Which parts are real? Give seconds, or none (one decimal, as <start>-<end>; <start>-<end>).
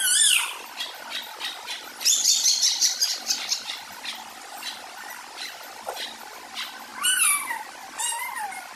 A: 0.0-8.8